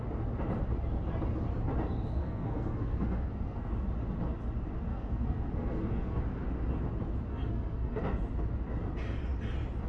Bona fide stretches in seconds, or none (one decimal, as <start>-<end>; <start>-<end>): 0.0-2.2; 3.7-4.9; 6.2-7.3; 8.0-9.9